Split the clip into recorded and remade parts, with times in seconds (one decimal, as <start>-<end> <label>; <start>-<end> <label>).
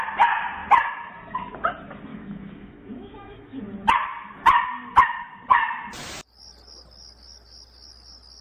0.0-2.1 recorded; 2.1-3.6 remade; 3.6-8.4 recorded